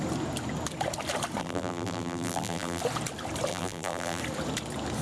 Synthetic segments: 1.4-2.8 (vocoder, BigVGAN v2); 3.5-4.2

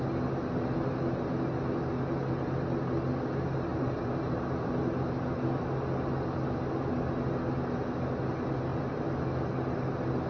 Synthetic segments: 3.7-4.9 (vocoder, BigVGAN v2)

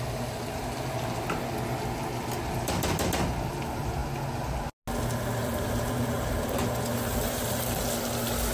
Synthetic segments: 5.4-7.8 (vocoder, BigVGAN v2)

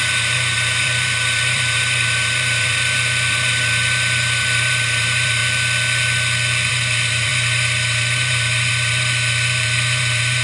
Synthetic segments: 0.0-5.4 (vocoder, BigVGAN v2); 6.7-10.4

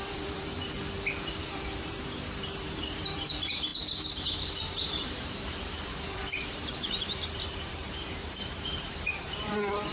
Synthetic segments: 0.0-0.6 (vocoder, BigVGAN v2); 1.3-3.7; 4.9-9.9

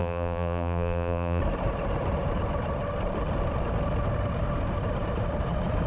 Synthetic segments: 0.0-1.4 (vocoder, BigVGAN v2)

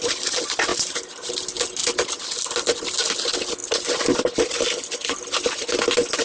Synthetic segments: 0.7-1.3 (vocoder, BigVGAN v2)

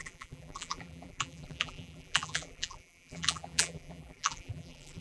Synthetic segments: 0.0-5.0 (vocoder, BigVGAN v2)